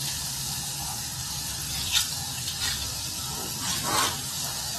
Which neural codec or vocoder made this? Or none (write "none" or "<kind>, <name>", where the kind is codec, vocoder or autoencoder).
none